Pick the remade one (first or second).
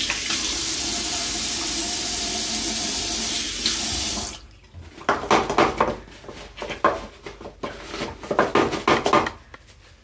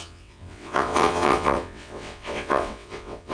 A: second